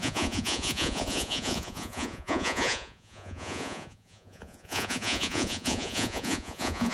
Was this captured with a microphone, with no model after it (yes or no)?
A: no